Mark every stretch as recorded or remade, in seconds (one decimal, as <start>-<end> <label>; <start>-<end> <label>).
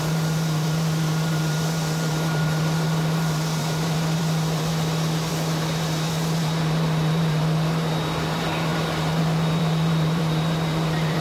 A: 0.0-4.7 remade; 4.7-5.3 recorded; 5.3-11.2 remade